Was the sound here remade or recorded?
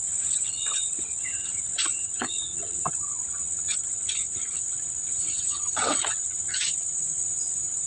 remade